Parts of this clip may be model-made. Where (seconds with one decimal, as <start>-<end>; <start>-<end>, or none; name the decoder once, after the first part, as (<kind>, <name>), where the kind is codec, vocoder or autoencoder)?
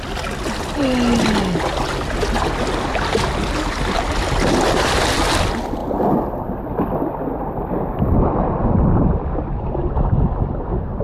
none